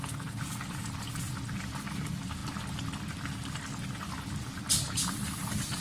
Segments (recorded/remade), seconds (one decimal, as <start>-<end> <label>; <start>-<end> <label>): 0.0-5.8 recorded